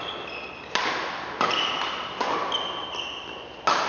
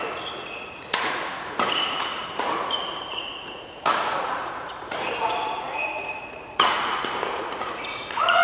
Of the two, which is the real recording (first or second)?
first